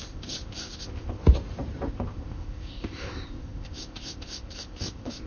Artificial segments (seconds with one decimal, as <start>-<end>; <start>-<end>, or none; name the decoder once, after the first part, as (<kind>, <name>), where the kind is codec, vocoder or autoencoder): 0.0-1.2 (codec, ZipCodec); 1.9-5.3